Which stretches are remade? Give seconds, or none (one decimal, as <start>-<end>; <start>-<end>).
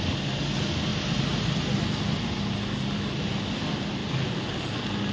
none